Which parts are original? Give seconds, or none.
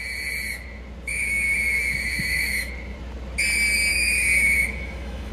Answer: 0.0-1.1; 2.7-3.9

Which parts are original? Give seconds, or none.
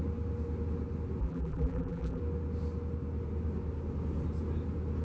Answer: 0.0-1.2; 2.2-5.0